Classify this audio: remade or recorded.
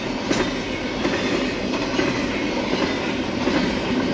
recorded